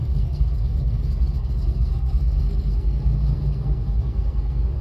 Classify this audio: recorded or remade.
remade